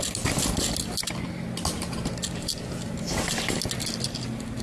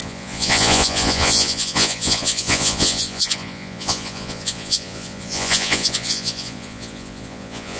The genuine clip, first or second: first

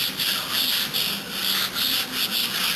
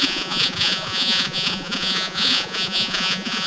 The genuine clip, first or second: first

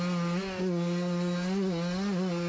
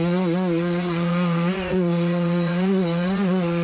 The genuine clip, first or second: first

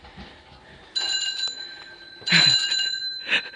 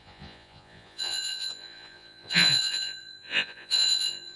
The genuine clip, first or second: first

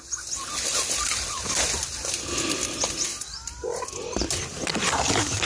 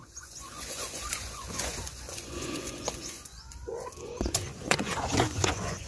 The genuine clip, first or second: first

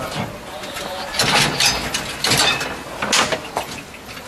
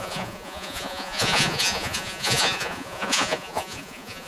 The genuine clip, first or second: first